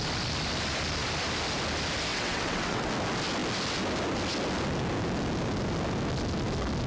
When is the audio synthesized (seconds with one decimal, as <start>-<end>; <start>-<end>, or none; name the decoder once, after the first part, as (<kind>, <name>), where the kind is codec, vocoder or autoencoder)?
2.1-2.9 (vocoder, WaveNeXt)